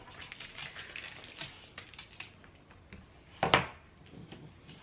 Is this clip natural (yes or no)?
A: yes